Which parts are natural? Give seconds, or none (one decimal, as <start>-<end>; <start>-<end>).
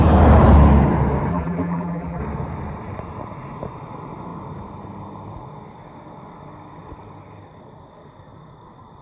0.0-1.3; 2.2-9.0